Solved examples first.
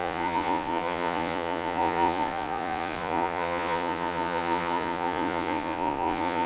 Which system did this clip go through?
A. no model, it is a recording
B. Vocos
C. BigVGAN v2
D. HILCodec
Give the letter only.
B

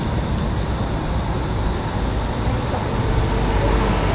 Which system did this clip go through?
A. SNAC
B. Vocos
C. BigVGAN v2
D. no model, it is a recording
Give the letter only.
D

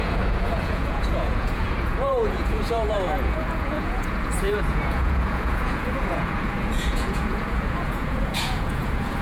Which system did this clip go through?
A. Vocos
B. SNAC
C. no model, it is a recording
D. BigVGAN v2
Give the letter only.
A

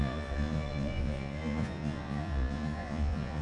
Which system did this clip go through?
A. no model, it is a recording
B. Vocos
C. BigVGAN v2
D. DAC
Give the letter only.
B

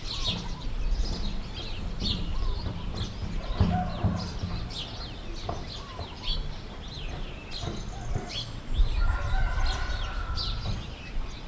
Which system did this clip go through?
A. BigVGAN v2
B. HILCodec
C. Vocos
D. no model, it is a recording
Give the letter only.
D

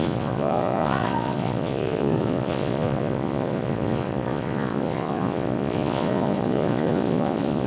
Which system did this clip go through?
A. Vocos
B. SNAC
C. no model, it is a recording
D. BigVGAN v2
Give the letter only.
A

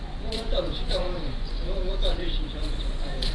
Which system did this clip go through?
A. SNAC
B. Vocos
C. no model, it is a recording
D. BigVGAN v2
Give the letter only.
B